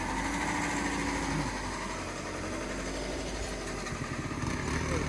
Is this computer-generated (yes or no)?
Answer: no